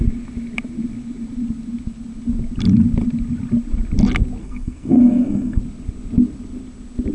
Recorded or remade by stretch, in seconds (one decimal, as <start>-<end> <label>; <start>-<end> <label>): 0.0-4.4 recorded; 4.4-5.6 remade; 5.6-7.1 recorded